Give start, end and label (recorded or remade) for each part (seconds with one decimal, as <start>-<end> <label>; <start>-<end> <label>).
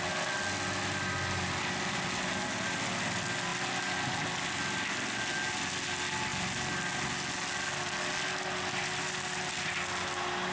0.0-10.5 recorded